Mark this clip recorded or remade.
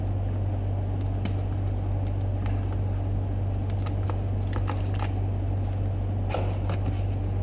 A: recorded